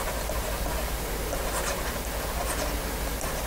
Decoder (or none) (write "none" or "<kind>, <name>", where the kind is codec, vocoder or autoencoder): none